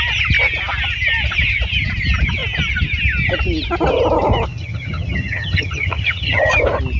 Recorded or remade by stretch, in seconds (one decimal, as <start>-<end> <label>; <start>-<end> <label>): 0.0-4.5 recorded; 4.5-6.5 remade; 6.5-7.0 recorded

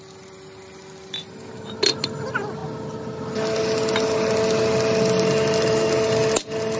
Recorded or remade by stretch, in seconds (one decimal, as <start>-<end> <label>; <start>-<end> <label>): 0.0-6.8 recorded

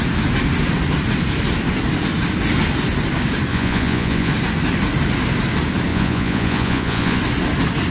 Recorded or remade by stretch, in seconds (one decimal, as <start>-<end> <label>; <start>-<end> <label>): 0.0-3.5 recorded; 3.5-4.3 remade; 4.3-5.9 recorded; 5.9-7.2 remade; 7.2-7.9 recorded

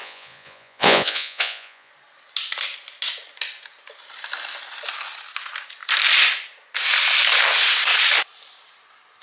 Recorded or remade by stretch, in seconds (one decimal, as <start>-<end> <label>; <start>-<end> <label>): 0.0-1.9 remade; 1.9-9.2 recorded